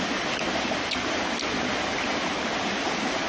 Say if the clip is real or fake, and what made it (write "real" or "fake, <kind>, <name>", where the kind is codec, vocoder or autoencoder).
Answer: real